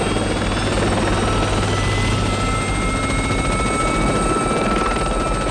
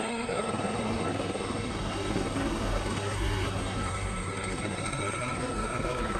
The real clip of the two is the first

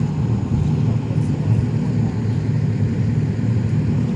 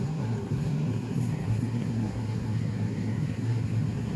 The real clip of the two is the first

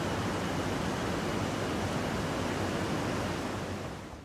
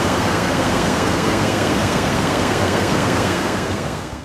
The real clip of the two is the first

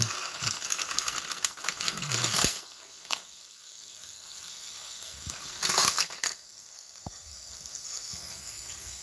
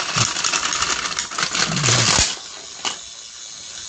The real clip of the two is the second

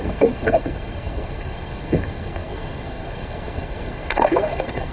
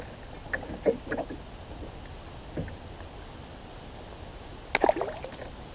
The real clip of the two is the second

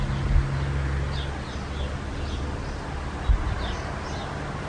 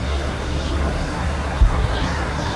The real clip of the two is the first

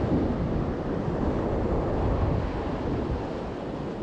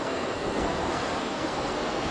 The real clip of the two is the first